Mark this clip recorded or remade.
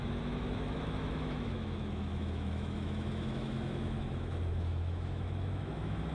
remade